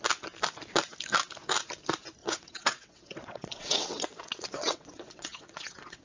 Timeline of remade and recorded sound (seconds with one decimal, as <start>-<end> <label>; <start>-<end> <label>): 0.0-2.2 recorded; 2.2-6.0 remade